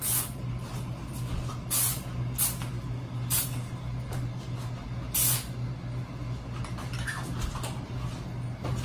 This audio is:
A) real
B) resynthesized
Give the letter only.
A